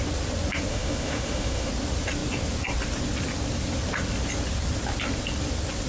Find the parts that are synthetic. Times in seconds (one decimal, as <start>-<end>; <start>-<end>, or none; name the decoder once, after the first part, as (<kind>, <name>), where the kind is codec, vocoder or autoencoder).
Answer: 0.7-1.7 (autoencoder, DAC-VAE)